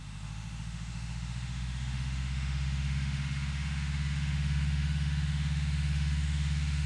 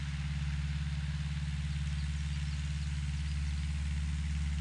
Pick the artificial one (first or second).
first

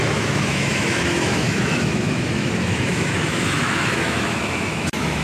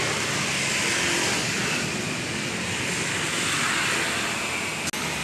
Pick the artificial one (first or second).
first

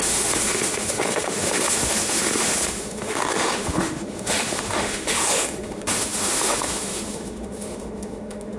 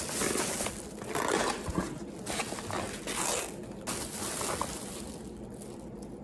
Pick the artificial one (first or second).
first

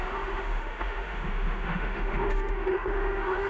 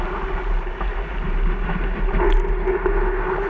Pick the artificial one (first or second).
first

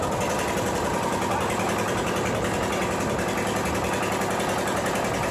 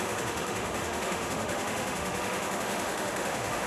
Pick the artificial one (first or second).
second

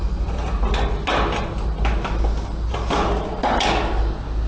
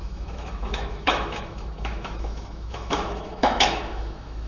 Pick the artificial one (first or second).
second